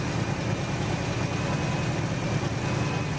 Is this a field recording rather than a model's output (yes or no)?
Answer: yes